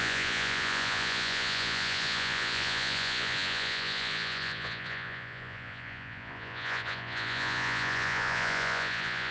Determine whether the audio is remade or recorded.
remade